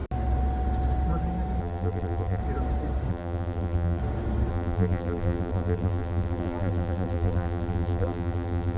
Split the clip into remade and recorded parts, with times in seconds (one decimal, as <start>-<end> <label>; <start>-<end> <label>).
0.0-1.6 recorded; 1.6-2.4 remade; 2.4-3.1 recorded; 3.1-4.0 remade; 4.0-4.5 recorded; 4.5-8.8 remade